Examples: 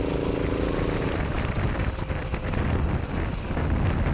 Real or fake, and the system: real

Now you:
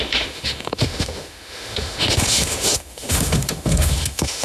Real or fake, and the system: fake, autoencoder, DAC-VAE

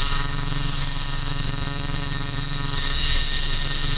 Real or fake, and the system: fake, autoencoder, DAC-VAE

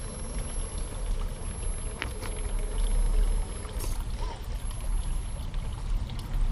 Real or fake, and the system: real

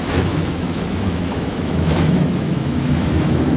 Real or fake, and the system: fake, autoencoder, DAC-VAE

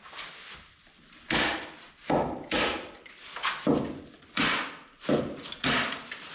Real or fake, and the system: real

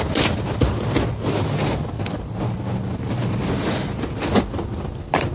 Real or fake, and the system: real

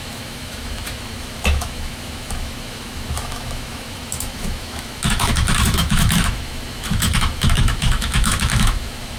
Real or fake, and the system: fake, autoencoder, DAC-VAE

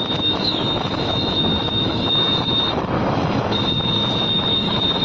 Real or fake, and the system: fake, autoencoder, DAC-VAE